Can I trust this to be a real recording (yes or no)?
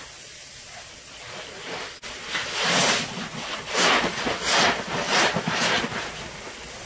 yes